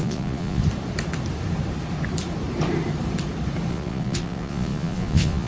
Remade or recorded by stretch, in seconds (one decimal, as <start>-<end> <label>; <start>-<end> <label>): 0.0-0.6 remade; 0.6-3.7 recorded; 3.7-5.5 remade